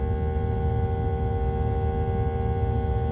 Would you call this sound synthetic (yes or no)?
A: no